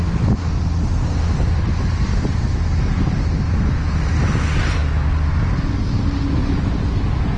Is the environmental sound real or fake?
real